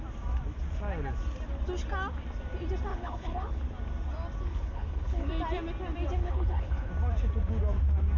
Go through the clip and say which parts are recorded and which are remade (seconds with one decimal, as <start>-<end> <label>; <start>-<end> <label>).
0.0-2.9 recorded; 2.9-3.6 remade; 3.6-4.5 recorded; 4.5-5.3 remade; 5.3-6.2 recorded; 6.2-6.9 remade; 6.9-8.2 recorded